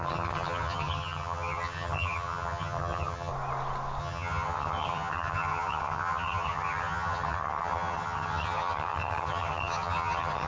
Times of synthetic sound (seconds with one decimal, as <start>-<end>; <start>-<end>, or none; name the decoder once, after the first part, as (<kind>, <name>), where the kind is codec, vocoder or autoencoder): 0.0-3.3 (vocoder, HiFi-GAN); 4.0-10.5